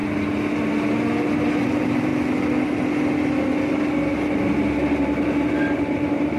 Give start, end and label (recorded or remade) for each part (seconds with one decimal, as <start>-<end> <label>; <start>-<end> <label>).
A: 0.0-1.6 recorded; 1.6-2.1 remade; 2.1-4.7 recorded; 4.7-6.4 remade